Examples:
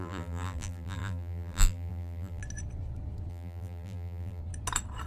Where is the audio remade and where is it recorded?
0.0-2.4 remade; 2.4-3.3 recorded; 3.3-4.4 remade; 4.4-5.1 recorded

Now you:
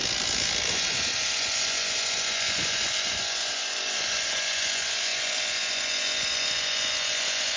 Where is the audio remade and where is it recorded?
0.0-0.7 recorded; 0.7-7.6 remade

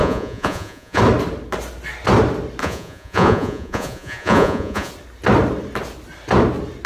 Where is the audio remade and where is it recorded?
0.0-1.0 remade; 1.0-2.6 recorded; 2.6-4.9 remade; 4.9-6.9 recorded

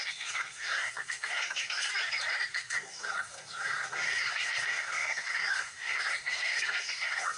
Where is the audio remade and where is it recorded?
0.0-1.9 remade; 1.9-2.5 recorded; 2.5-7.4 remade

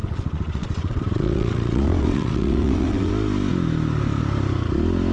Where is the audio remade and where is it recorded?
0.0-3.1 remade; 3.1-5.1 recorded

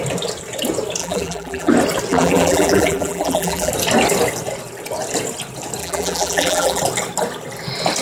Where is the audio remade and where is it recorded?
0.0-1.0 recorded; 1.0-1.7 remade; 1.7-2.1 recorded; 2.1-3.7 remade; 3.7-5.8 recorded; 5.8-6.8 remade; 6.8-8.0 recorded

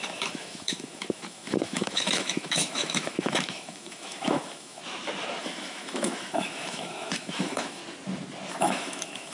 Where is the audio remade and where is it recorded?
0.0-4.8 remade; 4.8-5.4 recorded; 5.4-7.8 remade; 7.8-8.5 recorded; 8.5-9.3 remade